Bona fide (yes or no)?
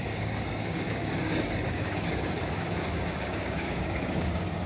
no